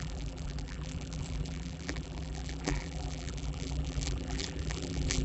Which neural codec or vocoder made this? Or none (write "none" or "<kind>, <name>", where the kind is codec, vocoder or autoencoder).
vocoder, BigVGAN v2